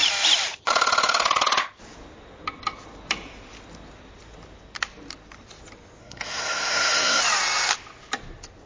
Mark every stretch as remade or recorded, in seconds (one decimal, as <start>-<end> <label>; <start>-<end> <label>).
0.0-6.0 recorded; 6.0-7.2 remade; 7.2-8.7 recorded